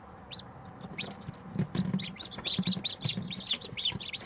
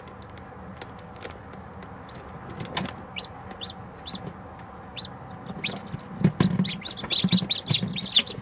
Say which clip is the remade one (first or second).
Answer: first